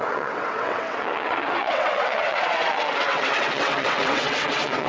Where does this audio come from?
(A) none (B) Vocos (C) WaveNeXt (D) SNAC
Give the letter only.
C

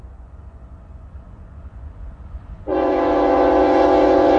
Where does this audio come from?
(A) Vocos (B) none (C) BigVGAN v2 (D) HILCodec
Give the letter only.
A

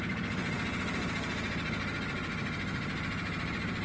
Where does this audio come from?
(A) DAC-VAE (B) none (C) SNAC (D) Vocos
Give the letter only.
B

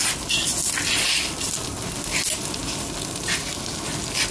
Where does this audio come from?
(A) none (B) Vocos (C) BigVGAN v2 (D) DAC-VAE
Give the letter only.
A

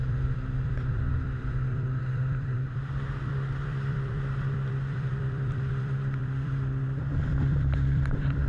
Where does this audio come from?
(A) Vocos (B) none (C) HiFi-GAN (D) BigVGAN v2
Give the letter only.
D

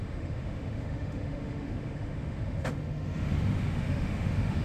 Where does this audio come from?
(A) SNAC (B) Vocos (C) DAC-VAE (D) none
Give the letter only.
C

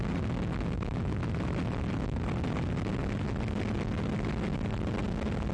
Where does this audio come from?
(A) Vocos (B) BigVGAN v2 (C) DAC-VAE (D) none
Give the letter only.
D